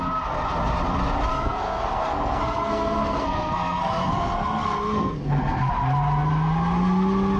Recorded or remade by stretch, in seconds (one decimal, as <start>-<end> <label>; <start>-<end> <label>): 0.0-1.3 recorded; 1.3-5.7 remade; 5.7-7.4 recorded